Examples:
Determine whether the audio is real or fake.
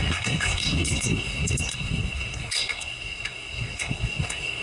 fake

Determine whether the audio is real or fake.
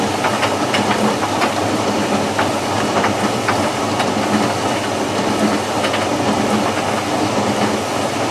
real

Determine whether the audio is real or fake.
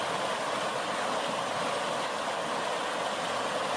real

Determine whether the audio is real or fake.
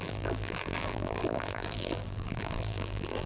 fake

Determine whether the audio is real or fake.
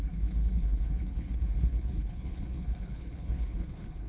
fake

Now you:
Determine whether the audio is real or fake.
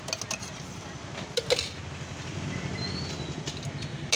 real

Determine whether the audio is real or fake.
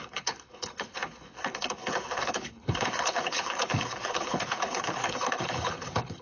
fake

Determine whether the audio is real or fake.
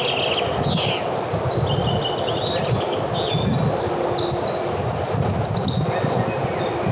real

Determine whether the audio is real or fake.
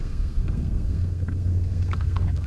fake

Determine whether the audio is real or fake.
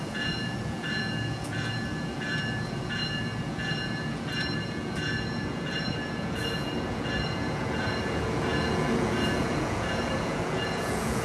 fake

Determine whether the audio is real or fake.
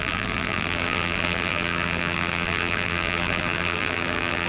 fake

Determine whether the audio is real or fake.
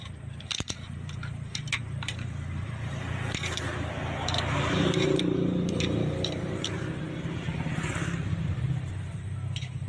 fake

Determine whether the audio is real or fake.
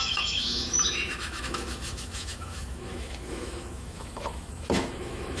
fake